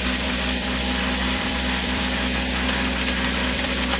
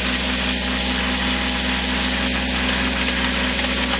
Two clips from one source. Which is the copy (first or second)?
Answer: first